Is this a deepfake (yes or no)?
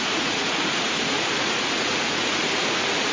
yes